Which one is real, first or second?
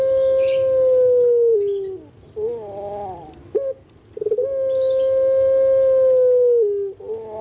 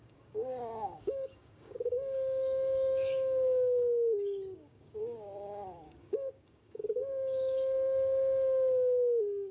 first